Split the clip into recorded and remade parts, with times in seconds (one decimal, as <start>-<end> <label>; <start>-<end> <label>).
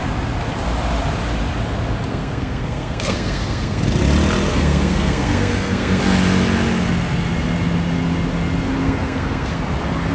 0.0-2.1 recorded; 2.1-3.8 remade; 3.8-4.5 recorded; 4.5-6.0 remade; 6.0-8.8 recorded; 8.8-9.6 remade; 9.6-10.1 recorded